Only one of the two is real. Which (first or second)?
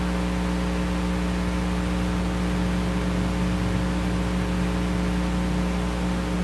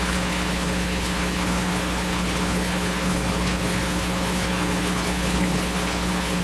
first